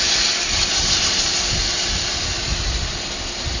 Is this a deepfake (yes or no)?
no